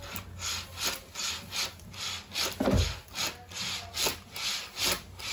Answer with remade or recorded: recorded